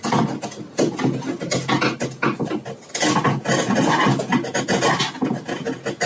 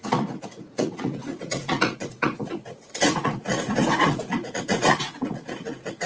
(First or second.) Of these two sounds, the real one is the first